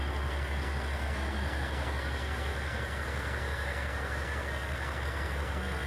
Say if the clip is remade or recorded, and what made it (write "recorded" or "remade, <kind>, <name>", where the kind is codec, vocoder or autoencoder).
remade, codec, SNAC